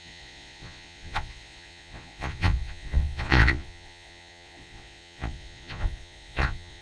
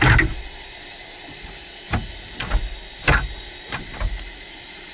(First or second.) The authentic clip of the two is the second